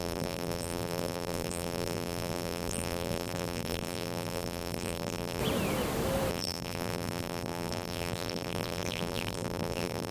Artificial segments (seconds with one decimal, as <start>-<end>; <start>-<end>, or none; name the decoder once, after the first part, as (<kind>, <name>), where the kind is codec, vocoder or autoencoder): 0.0-5.4 (vocoder, BigVGAN v2); 6.3-10.1